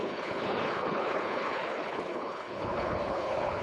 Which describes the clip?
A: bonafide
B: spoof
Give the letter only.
B